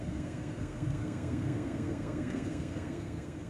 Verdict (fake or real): fake